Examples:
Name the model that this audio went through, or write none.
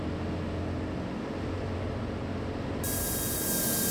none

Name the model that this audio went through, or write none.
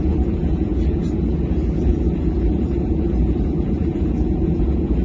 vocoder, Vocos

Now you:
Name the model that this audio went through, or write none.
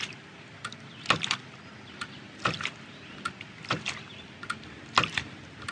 none